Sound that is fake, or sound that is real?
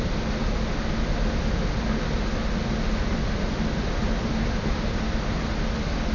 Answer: real